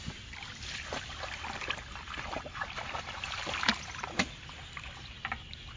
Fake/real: real